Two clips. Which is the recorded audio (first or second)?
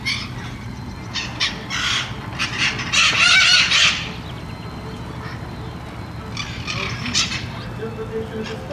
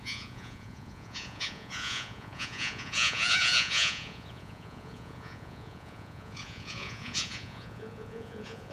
first